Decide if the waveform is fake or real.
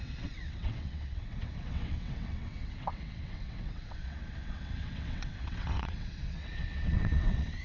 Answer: fake